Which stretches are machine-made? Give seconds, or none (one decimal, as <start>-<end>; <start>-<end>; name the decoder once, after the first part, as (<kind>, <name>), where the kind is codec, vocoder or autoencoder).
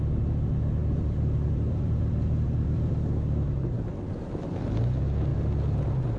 0.8-2.9 (vocoder, BigVGAN v2); 5.3-5.8